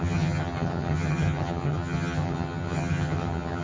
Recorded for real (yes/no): no